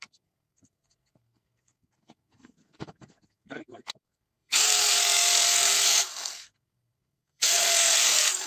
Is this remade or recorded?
remade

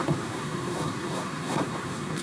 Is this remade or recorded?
remade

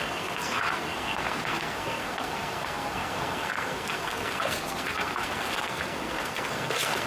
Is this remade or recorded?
remade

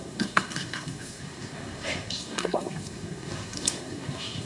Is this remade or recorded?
remade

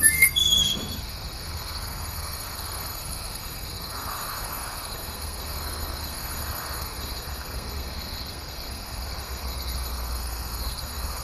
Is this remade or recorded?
remade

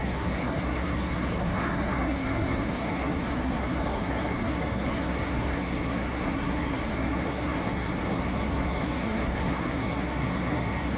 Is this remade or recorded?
remade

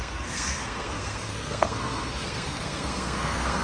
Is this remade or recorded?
remade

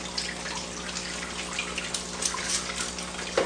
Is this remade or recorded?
recorded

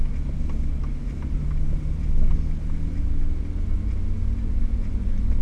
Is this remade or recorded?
recorded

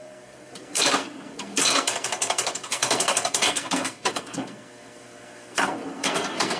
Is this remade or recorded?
remade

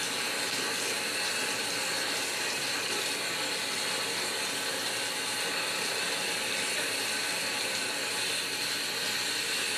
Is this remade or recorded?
recorded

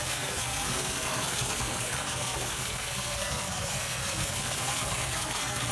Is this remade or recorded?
remade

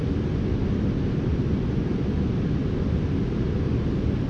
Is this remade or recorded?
recorded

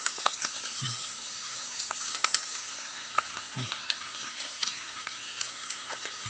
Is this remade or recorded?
remade